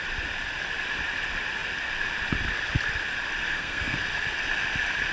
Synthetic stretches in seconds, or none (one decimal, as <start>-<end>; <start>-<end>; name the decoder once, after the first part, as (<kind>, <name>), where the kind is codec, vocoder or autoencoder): 3.4-4.0 (codec, SNAC)

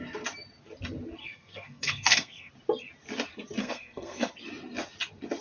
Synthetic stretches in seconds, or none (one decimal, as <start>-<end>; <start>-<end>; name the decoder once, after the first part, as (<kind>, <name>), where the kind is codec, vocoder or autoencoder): 1.2-2.5 (codec, SNAC); 3.6-4.3

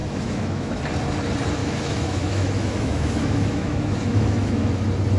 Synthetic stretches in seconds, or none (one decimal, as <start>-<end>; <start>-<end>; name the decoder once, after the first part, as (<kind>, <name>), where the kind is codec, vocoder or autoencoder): 0.0-0.8 (autoencoder, DAC-VAE); 1.6-4.7

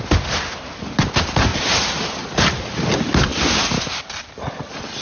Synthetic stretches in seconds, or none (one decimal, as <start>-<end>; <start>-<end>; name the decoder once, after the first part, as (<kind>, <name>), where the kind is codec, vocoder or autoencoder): 1.5-2.9 (vocoder, BigVGAN v2); 3.3-3.8

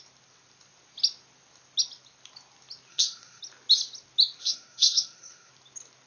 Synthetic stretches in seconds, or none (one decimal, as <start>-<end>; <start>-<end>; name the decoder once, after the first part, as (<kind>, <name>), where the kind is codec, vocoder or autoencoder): 2.9-3.4 (codec, SNAC); 4.4-5.5

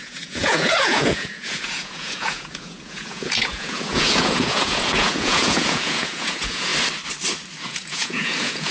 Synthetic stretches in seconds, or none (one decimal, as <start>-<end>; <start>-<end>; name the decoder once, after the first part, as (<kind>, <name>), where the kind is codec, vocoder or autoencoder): 0.0-6.7 (vocoder, Vocos); 7.6-8.7

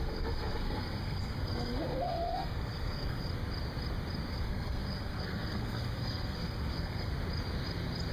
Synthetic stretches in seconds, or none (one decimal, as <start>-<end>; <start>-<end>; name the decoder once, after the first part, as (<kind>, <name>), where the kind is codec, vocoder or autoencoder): 0.0-3.3 (codec, SNAC); 4.3-7.1

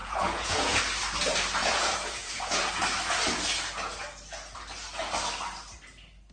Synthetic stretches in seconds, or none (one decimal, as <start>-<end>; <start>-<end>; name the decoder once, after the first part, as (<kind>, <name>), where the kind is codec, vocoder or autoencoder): 0.0-0.8 (vocoder, Vocos); 1.6-2.7